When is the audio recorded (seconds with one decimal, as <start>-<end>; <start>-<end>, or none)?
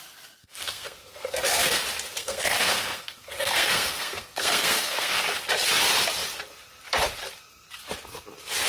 0.0-0.4; 1.8-2.2; 5.2-8.7